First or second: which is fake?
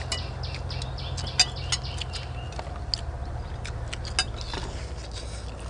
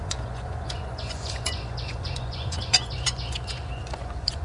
second